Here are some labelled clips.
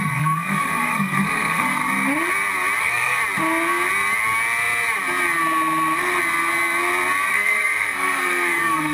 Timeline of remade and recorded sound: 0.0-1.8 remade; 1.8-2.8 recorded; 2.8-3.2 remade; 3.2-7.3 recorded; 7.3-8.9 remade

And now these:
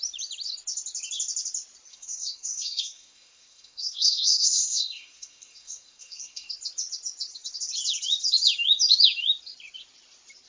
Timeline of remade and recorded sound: 0.0-1.9 recorded; 1.9-6.5 remade; 6.5-10.5 recorded

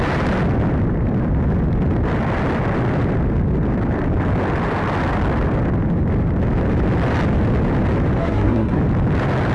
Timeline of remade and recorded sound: 0.0-8.2 recorded; 8.2-8.8 remade; 8.8-9.5 recorded